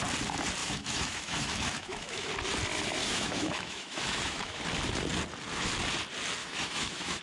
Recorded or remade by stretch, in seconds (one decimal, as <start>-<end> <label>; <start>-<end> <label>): 0.0-0.6 recorded; 0.6-2.3 remade; 2.3-3.0 recorded; 3.0-4.6 remade; 4.6-6.4 recorded; 6.4-7.2 remade